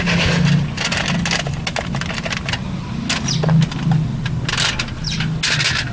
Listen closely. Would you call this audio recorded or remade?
recorded